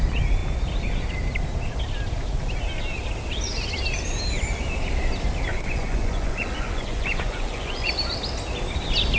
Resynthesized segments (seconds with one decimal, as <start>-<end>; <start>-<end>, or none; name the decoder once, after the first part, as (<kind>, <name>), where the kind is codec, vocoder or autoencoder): 5.5-7.9 (vocoder, Vocos)